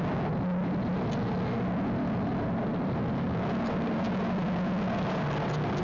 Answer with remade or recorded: recorded